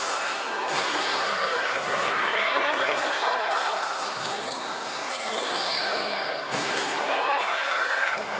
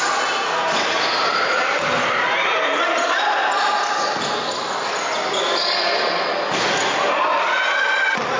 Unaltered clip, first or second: second